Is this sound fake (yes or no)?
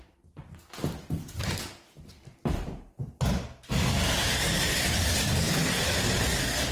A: no